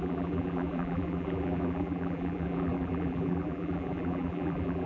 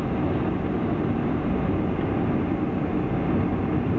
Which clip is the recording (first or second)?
second